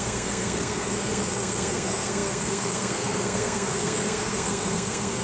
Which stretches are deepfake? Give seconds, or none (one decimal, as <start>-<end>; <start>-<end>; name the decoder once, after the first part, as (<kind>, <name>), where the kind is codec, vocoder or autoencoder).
0.0-5.2 (codec, SNAC)